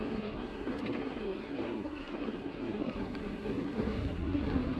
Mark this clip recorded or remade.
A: remade